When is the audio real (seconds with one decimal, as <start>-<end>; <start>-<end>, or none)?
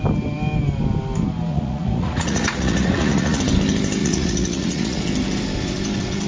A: 0.0-1.5; 3.4-4.0; 5.0-6.3